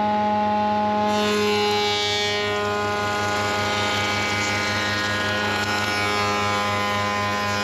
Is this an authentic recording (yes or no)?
yes